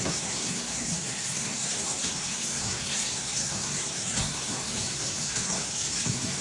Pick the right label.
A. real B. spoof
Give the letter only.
B